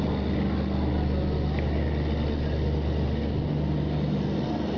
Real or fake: real